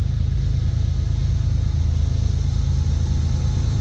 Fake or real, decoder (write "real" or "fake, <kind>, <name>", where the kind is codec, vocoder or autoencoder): real